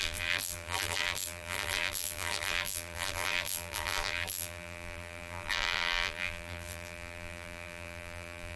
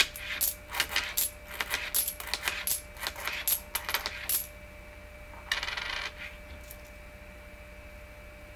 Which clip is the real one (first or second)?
second